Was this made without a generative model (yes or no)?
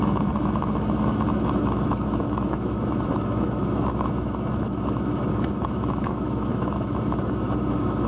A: no